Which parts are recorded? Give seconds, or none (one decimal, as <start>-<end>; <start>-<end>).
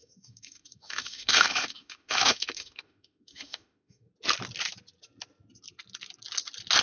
4.1-6.8